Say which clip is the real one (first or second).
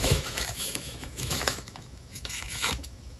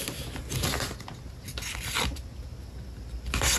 second